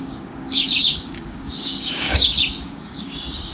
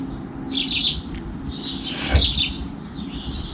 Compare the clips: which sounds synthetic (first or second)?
first